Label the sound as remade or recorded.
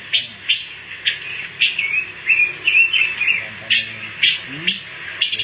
recorded